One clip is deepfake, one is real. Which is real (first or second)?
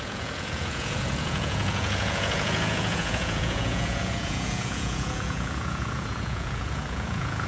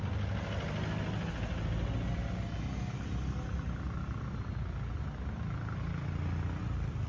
second